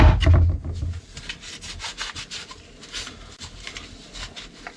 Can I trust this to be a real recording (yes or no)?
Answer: yes